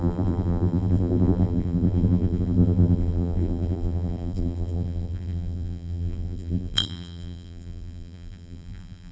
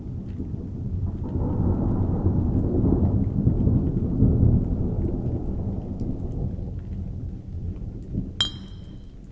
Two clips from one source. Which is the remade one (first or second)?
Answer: first